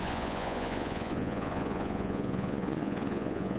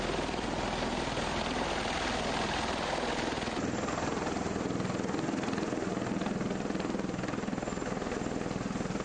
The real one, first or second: second